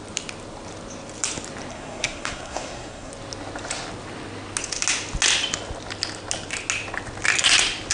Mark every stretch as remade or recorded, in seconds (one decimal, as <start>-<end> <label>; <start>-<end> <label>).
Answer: 0.0-1.7 recorded; 1.7-3.1 remade; 3.1-7.9 recorded